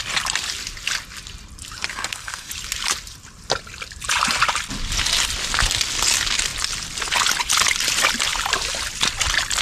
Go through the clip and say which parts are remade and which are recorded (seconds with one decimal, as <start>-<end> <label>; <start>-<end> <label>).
0.0-1.9 recorded; 1.9-2.5 remade; 2.5-9.6 recorded